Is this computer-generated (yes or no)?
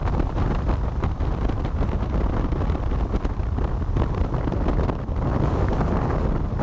no